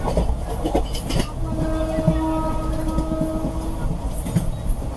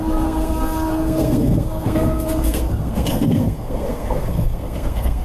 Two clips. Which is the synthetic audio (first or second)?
second